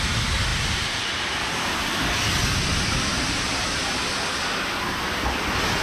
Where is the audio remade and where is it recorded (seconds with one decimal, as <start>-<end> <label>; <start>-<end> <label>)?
0.0-0.5 recorded; 0.5-2.0 remade; 2.0-3.1 recorded; 3.1-4.1 remade; 4.1-5.8 recorded